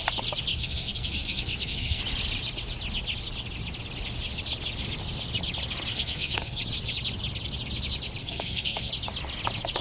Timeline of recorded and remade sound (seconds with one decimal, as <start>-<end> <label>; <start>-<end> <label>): 0.0-0.5 recorded; 0.5-2.0 remade; 2.0-5.9 recorded; 5.9-6.6 remade; 6.6-8.2 recorded; 8.2-8.9 remade; 8.9-9.8 recorded